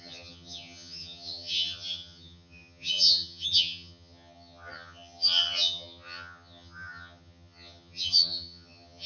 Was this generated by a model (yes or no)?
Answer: yes